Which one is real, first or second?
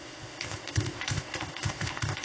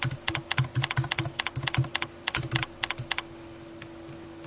second